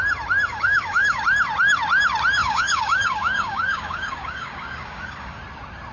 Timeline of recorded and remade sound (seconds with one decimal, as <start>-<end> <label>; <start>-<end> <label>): 0.0-0.5 recorded; 0.5-1.2 remade; 1.2-2.4 recorded; 2.4-5.4 remade; 5.4-5.9 recorded